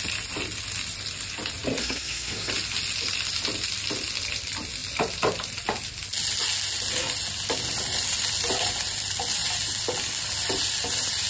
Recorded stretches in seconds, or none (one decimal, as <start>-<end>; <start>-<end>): 0.0-1.8; 2.5-11.3